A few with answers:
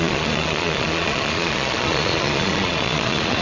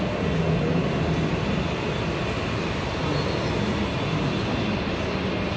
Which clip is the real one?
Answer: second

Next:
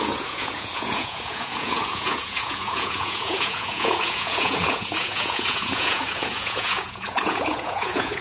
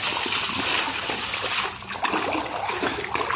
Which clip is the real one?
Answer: second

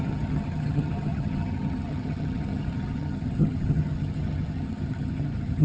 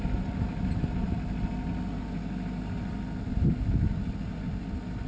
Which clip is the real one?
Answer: second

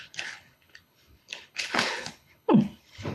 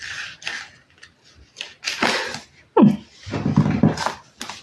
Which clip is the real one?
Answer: second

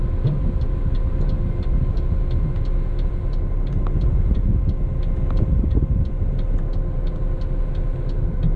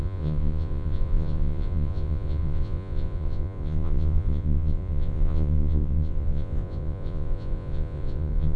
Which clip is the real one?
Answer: first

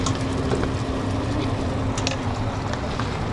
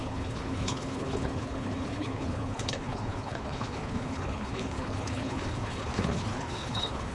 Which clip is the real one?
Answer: first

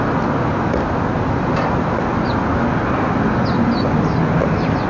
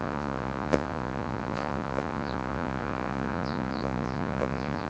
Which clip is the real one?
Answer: first